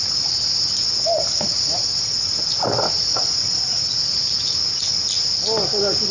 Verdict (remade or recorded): recorded